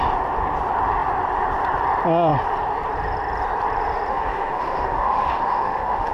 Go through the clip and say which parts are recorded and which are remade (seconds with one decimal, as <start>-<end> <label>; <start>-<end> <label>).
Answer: 0.0-4.1 recorded; 4.1-6.1 remade